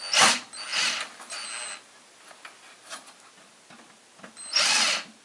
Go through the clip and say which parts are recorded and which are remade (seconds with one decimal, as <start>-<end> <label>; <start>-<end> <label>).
0.0-5.2 recorded